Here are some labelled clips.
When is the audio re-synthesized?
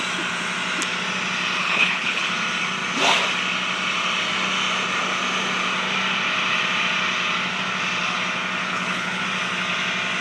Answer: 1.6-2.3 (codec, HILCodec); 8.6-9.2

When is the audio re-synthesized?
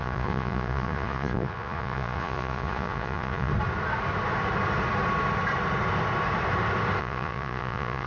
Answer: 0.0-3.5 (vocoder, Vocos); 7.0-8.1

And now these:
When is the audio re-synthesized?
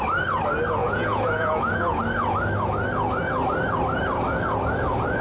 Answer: 0.8-2.0 (vocoder, Vocos)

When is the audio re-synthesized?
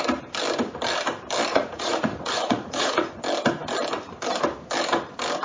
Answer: 1.5-3.1 (vocoder, Vocos)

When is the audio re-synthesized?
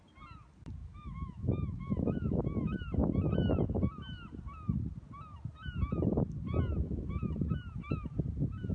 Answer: 0.8-2.4 (autoencoder, DAC-VAE)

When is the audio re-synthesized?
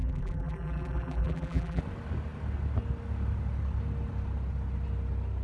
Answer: 0.0-1.8 (vocoder, BigVGAN v2)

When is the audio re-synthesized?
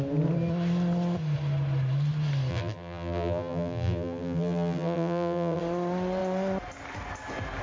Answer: 2.5-5.6 (vocoder, BigVGAN v2)